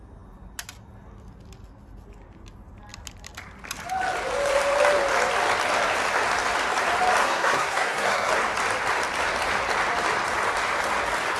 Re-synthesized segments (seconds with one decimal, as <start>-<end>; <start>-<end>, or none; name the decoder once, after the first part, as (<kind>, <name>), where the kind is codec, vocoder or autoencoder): 7.2-8.3 (codec, SNAC)